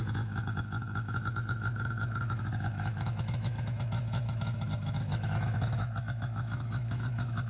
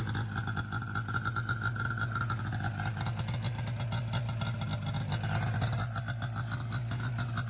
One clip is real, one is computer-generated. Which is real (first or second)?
second